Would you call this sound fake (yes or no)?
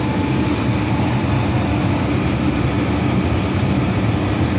no